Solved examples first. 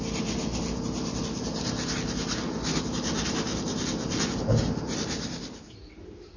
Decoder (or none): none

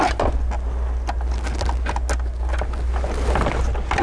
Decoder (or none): none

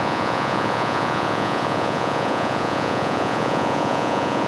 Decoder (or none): vocoder, Vocos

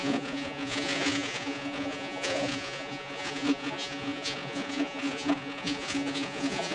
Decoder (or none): vocoder, Vocos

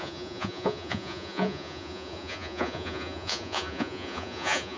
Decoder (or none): vocoder, Vocos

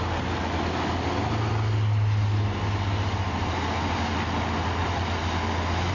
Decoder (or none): none